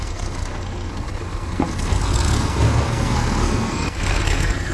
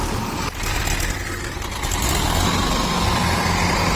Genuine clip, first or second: second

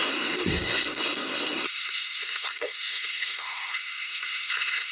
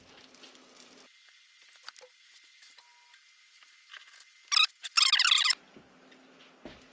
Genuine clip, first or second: second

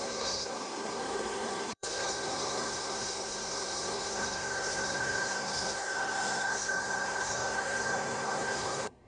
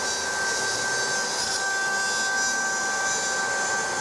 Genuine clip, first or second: second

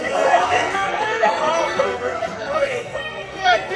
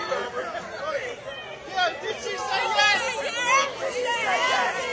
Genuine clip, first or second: second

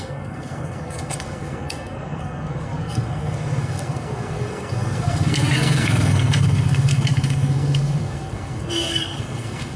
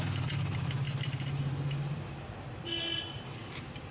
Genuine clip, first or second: second